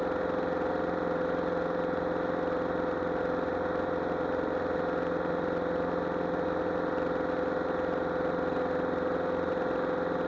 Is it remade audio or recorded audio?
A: recorded